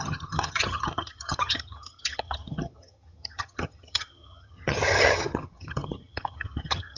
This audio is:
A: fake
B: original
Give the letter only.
A